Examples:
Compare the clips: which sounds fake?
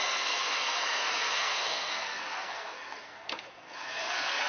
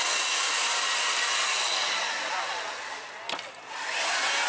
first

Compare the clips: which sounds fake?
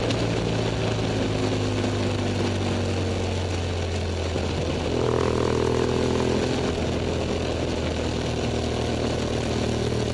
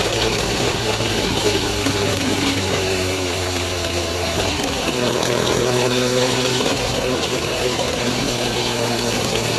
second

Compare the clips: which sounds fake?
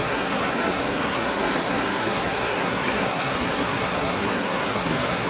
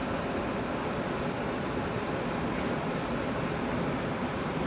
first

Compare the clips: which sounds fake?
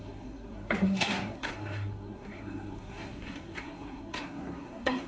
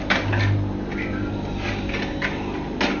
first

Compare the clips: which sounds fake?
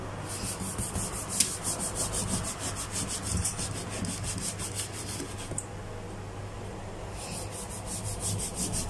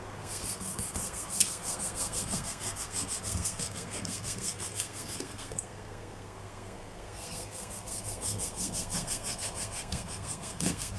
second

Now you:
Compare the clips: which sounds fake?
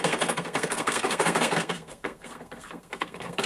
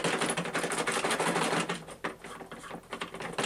first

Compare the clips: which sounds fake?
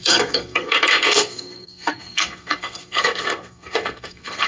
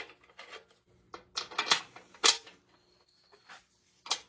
first